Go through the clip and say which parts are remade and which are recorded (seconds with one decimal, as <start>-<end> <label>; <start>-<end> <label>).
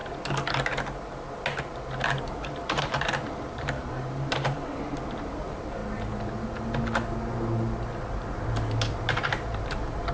0.0-2.2 recorded; 2.2-5.8 remade; 5.8-8.1 recorded; 8.1-10.1 remade